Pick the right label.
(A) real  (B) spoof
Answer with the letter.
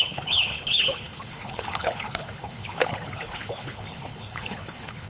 B